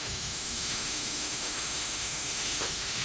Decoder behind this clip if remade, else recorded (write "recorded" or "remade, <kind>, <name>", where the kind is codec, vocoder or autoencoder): remade, autoencoder, DAC-VAE